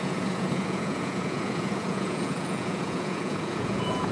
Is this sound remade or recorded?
remade